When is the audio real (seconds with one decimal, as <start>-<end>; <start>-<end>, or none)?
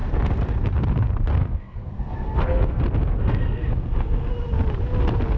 0.0-1.3; 2.8-3.2; 4.3-5.4